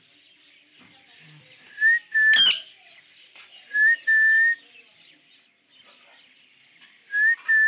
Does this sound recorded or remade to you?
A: recorded